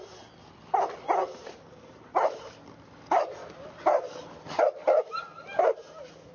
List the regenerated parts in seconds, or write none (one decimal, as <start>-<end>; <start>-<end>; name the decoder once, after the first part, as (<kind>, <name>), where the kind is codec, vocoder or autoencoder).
1.2-2.4 (vocoder, BigVGAN v2)